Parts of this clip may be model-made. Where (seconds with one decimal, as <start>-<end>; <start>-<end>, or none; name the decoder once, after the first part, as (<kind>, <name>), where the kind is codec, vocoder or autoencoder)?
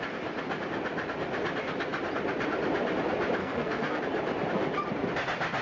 3.4-4.0 (codec, SNAC)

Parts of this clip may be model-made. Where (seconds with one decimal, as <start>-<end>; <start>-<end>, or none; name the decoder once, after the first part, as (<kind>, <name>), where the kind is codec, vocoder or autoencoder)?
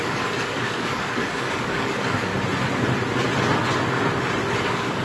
0.0-2.3 (codec, DAC); 4.6-5.0